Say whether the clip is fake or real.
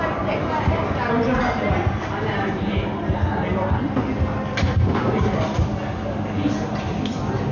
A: real